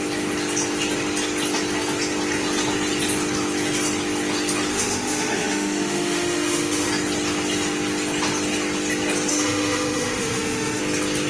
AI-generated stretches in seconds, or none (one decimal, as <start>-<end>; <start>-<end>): 4.7-6.9; 9.3-10.8